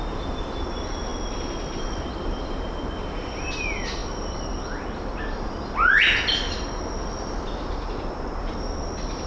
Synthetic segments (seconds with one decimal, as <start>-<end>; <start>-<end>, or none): none